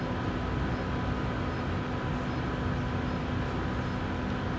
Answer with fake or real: real